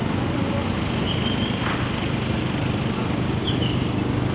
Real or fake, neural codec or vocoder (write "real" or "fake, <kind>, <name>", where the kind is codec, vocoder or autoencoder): real